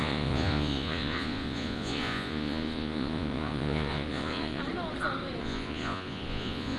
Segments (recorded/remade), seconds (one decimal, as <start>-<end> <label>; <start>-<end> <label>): 0.0-4.6 remade; 4.6-5.4 recorded; 5.4-6.8 remade